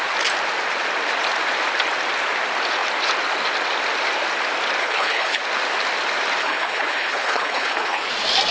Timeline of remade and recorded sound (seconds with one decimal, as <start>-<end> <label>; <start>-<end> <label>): 0.0-4.8 recorded; 4.8-5.4 remade; 5.4-6.4 recorded; 6.4-8.1 remade; 8.1-8.5 recorded